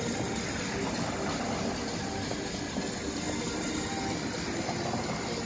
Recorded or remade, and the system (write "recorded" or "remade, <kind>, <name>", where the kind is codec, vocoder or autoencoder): recorded